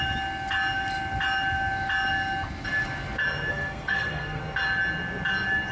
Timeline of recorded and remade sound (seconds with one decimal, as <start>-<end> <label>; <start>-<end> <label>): 0.0-3.5 recorded; 3.5-4.4 remade; 4.4-5.7 recorded